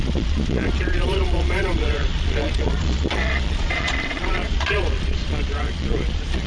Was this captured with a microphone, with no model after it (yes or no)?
no